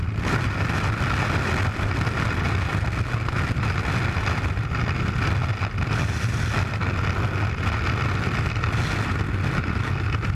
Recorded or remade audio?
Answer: recorded